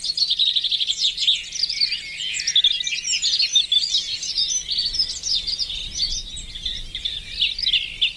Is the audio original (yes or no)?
yes